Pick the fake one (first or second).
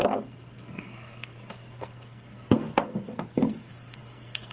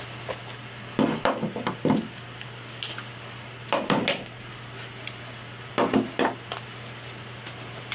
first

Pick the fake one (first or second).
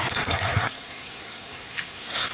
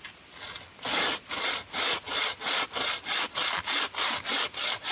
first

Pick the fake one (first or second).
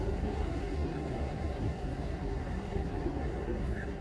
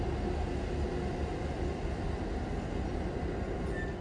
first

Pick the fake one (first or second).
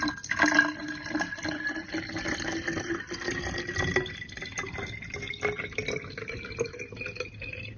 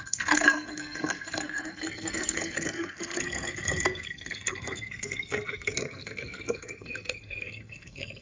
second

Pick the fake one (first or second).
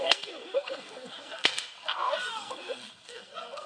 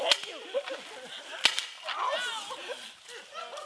first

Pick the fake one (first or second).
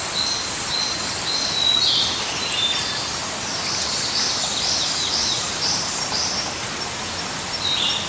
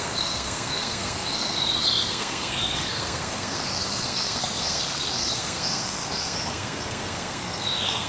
second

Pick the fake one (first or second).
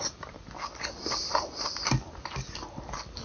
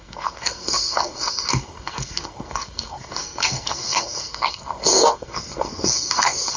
second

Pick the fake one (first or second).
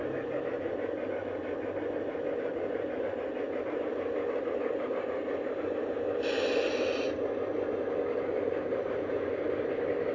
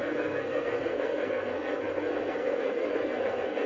second